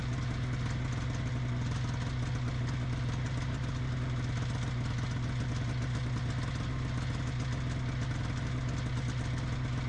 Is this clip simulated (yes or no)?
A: no